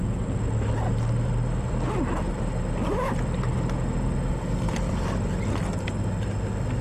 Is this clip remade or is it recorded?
recorded